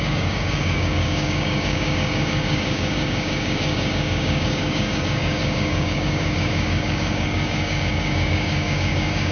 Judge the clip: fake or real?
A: fake